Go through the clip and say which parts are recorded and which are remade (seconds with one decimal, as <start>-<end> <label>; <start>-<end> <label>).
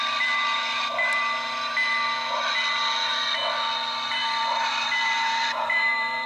0.0-4.2 recorded; 4.2-6.3 remade